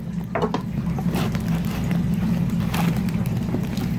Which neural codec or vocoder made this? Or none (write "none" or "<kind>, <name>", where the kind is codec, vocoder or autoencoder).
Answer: none